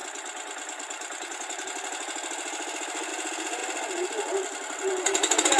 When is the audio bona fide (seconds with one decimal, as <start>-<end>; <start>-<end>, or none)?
0.0-5.6